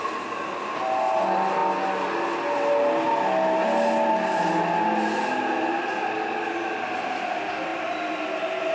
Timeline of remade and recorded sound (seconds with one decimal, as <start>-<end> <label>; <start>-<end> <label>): 0.0-8.7 recorded